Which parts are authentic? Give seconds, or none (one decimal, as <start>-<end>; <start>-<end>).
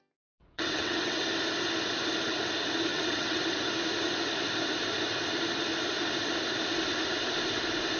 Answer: 0.0-0.4; 1.2-2.9; 3.4-8.0